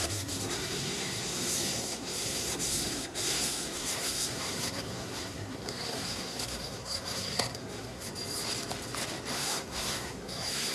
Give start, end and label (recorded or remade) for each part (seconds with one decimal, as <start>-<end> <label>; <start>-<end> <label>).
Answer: 0.0-8.1 remade; 8.1-9.3 recorded; 9.3-10.7 remade